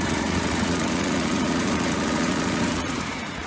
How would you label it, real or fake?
fake